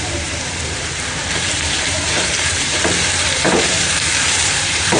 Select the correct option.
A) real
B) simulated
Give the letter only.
B